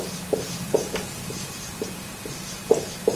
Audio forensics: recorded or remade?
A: remade